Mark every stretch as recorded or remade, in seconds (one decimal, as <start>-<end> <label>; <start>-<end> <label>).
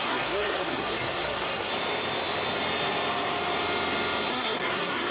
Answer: 0.0-1.7 remade; 1.7-4.3 recorded; 4.3-5.1 remade